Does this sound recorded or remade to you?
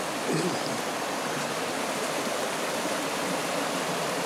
recorded